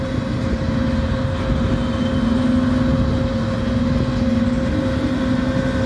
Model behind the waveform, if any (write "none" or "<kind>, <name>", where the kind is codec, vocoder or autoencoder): none